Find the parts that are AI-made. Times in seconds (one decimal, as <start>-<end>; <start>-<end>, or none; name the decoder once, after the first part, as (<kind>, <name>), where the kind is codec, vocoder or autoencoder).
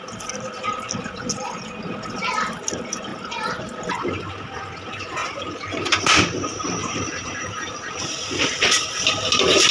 5.2-9.7 (vocoder, BigVGAN v2)